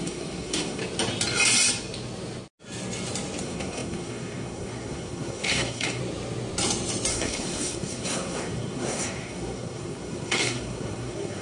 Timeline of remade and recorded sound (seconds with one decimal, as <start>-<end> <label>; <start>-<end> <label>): 0.0-0.8 remade; 0.8-3.4 recorded; 3.4-6.0 remade; 6.0-7.1 recorded; 7.1-11.4 remade